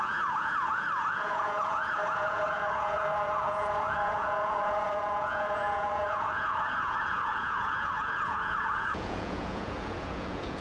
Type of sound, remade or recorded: remade